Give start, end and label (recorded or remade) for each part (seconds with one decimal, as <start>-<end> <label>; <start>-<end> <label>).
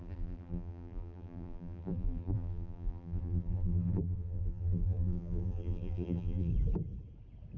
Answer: 0.0-6.5 remade; 6.5-7.6 recorded